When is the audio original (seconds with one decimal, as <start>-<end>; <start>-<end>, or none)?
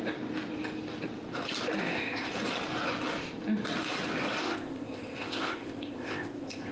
0.0-1.8; 2.3-4.4